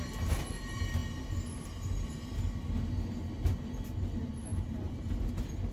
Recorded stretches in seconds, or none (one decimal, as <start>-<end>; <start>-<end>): 0.0-4.5; 5.3-5.7

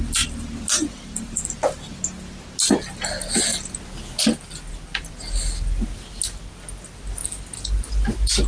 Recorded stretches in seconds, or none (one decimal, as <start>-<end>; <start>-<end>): 2.0-8.5

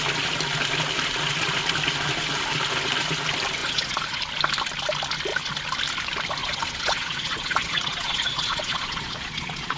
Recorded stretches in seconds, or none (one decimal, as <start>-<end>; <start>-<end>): 0.0-3.6; 4.2-6.4

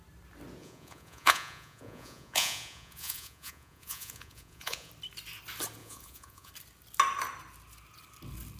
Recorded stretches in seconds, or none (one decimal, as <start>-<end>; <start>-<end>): 0.0-0.6; 4.9-5.8; 6.5-8.6

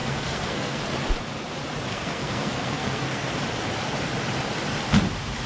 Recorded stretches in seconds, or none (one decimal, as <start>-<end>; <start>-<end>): 0.8-1.9; 3.4-5.5

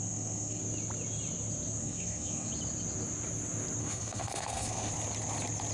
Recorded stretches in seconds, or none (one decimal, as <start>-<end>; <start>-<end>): 0.6-1.8; 2.5-3.8; 4.9-5.7

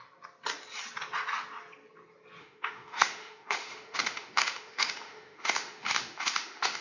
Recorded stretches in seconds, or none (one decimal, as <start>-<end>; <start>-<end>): 0.0-2.4